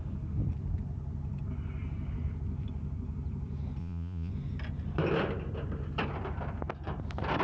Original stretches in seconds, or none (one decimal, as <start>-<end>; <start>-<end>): 0.0-3.8; 4.3-7.4